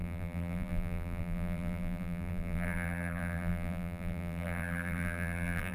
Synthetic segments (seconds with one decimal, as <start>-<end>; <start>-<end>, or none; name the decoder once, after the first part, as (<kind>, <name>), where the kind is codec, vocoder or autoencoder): 0.0-5.7 (vocoder, BigVGAN v2)